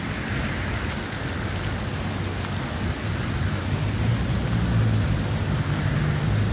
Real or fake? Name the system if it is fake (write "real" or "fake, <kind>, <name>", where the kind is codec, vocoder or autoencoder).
real